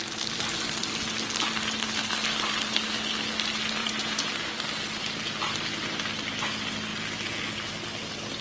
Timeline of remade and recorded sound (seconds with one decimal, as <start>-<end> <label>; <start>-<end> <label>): 0.0-3.8 recorded; 3.8-4.3 remade; 4.3-8.4 recorded